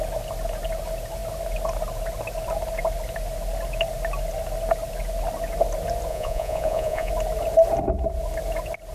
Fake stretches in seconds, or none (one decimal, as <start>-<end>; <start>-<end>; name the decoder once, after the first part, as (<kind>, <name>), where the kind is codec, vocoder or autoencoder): 6.1-7.1 (vocoder, Vocos)

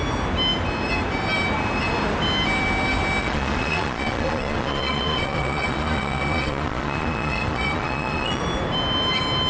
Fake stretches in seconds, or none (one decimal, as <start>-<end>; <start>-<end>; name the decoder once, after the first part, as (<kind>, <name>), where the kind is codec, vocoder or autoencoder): 3.2-8.4 (vocoder, Vocos)

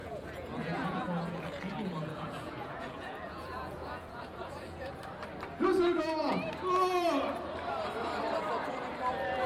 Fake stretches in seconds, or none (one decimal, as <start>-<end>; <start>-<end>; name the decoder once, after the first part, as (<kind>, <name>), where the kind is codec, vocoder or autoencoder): 0.0-5.0 (vocoder, Vocos); 5.7-6.4

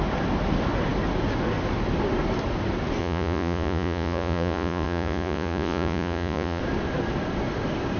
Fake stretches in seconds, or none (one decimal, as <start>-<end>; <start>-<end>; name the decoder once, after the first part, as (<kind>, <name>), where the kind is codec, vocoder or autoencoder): 3.0-6.6 (vocoder, Vocos)